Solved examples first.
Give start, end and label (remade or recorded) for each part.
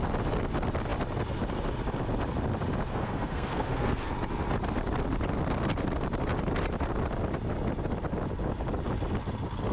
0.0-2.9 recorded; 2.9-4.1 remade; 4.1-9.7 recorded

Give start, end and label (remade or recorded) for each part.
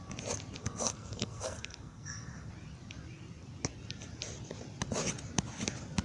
0.0-0.6 recorded; 0.6-2.5 remade; 2.5-6.0 recorded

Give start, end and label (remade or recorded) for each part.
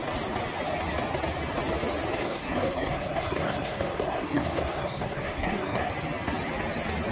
0.0-2.2 recorded; 2.2-5.9 remade; 5.9-7.1 recorded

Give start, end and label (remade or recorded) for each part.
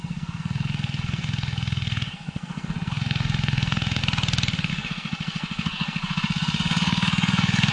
0.0-4.0 remade; 4.0-4.7 recorded; 4.7-7.7 remade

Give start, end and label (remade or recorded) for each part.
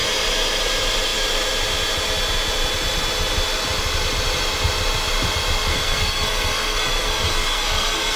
0.0-5.7 recorded; 5.7-8.2 remade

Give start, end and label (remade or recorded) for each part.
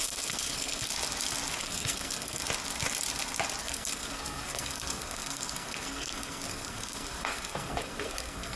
0.0-0.9 remade; 0.9-1.6 recorded; 1.6-2.4 remade; 2.4-3.6 recorded; 3.6-8.6 remade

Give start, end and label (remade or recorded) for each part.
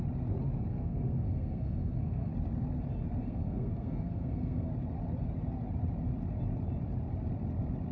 0.0-0.7 recorded; 0.7-2.3 remade; 2.3-3.2 recorded; 3.2-4.7 remade; 4.7-7.9 recorded